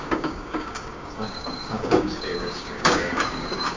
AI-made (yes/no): yes